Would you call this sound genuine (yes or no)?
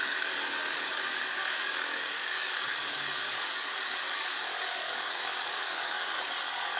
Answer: no